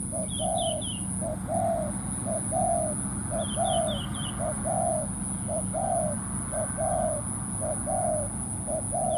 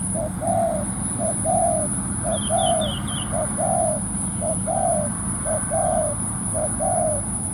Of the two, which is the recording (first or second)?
first